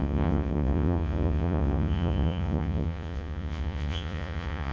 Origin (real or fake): fake